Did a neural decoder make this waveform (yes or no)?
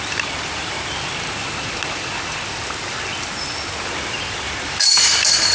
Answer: no